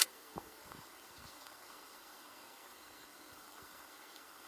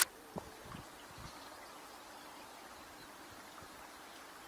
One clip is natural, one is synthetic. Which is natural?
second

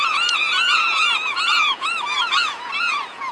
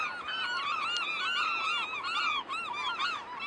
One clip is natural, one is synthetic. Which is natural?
second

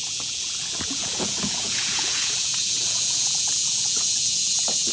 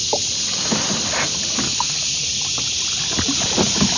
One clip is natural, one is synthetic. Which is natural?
second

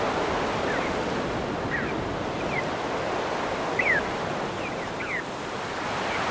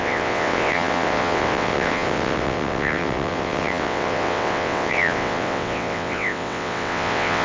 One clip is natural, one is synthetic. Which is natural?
first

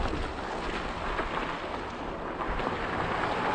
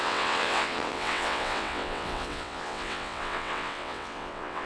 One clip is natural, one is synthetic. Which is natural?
first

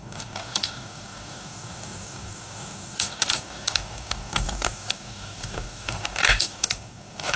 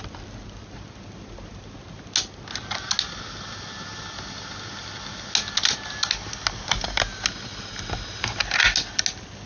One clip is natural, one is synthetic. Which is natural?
second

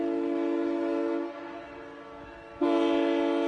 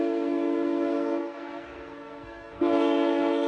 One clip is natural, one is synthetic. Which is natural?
first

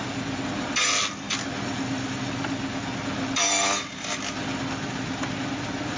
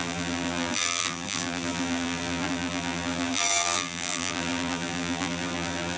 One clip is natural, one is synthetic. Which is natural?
first